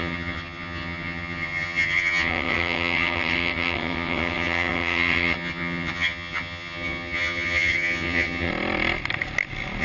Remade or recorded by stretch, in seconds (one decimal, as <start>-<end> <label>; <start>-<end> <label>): 0.0-8.5 remade; 8.5-9.8 recorded